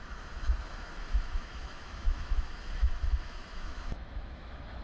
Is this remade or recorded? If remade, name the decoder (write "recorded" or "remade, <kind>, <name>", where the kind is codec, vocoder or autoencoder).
remade, autoencoder, DAC-VAE